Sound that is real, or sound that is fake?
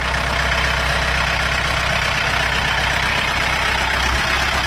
real